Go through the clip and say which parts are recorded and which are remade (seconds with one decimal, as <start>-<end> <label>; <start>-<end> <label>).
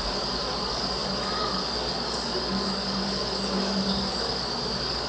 0.0-5.1 remade